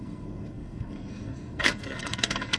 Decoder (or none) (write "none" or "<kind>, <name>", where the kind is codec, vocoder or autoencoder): codec, SNAC